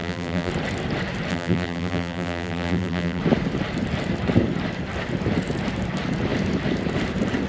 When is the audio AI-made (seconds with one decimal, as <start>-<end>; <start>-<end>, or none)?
0.0-0.5; 1.3-3.2